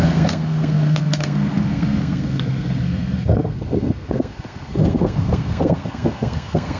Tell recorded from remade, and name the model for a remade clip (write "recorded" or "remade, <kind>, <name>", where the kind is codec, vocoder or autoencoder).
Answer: remade, codec, SNAC